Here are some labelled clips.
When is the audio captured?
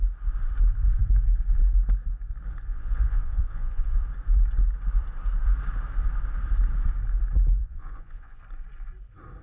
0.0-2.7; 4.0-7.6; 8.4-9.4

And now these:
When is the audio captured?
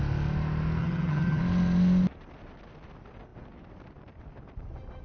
0.0-0.8; 1.4-5.0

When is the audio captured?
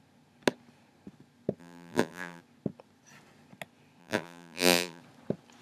0.0-1.6; 2.4-4.0; 5.0-5.6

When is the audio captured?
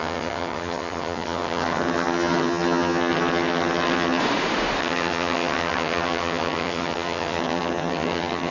4.2-4.8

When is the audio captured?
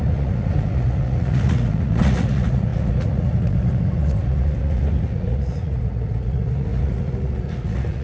none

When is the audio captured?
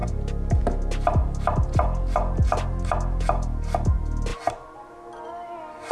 0.0-5.9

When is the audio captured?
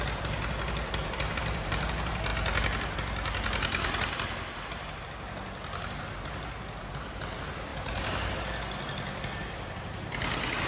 0.0-7.7; 8.3-10.7